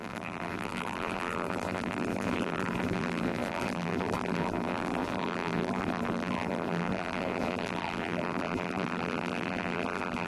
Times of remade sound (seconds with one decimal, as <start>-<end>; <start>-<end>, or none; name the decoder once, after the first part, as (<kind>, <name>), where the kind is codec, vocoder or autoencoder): 0.0-10.3 (vocoder, BigVGAN v2)